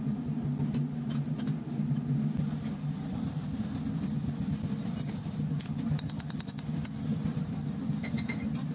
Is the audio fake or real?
real